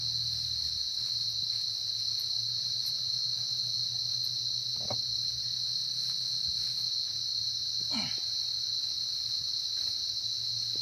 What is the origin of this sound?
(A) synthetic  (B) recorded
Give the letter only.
B